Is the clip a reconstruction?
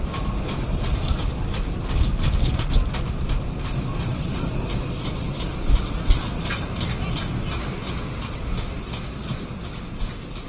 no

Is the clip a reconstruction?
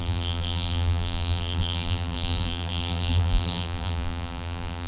yes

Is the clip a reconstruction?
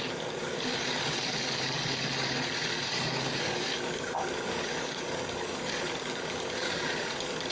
yes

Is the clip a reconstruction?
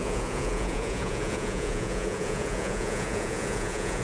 yes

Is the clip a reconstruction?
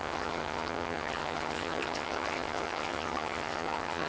yes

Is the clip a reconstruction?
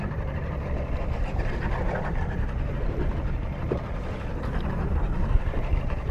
yes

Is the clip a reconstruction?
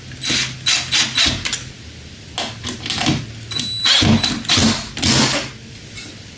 no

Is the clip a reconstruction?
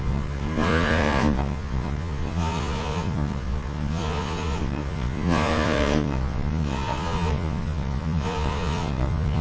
yes